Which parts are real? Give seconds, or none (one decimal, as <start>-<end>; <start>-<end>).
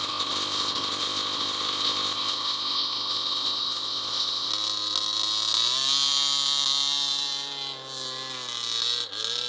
4.5-9.5